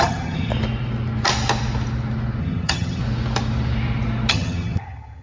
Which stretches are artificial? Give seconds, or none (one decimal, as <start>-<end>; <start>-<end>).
0.0-0.5; 2.4-3.0; 4.3-5.2